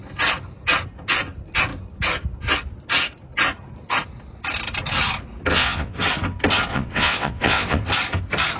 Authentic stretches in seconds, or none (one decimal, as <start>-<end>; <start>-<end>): 0.0-5.5; 6.0-6.7; 7.9-8.6